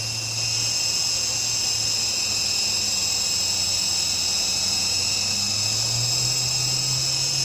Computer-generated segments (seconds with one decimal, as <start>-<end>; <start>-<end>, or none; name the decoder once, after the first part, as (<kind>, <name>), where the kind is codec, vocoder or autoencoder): none